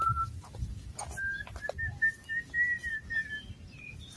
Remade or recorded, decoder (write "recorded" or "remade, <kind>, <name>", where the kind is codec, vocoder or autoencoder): recorded